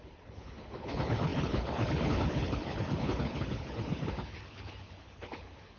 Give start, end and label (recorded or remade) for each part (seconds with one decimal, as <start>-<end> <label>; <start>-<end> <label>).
0.0-5.8 remade